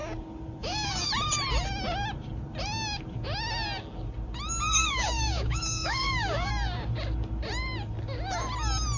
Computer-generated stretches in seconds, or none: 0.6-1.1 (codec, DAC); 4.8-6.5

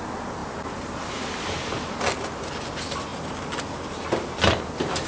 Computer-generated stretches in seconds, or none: none

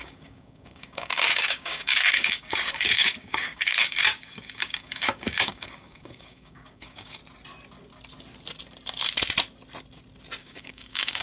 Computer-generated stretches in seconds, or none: 0.0-7.2 (codec, DAC); 10.4-11.2

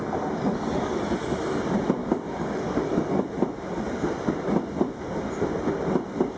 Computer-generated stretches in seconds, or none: 2.0-3.2 (codec, DAC)

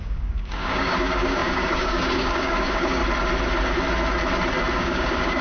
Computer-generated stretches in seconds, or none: 0.0-3.0 (codec, DAC); 4.7-5.4

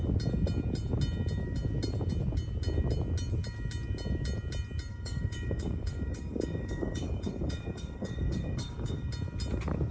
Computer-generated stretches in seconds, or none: 4.9-9.1 (codec, DAC)

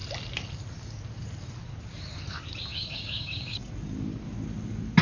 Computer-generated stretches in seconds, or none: 2.7-3.7 (codec, DAC)

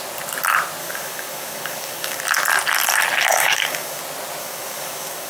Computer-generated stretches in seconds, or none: 0.8-2.2 (codec, DAC); 3.3-4.0; 4.4-5.3